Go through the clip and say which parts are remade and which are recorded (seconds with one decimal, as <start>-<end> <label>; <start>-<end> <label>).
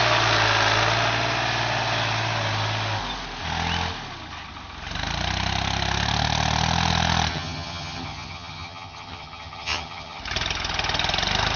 0.0-7.3 recorded; 7.3-10.2 remade; 10.2-11.6 recorded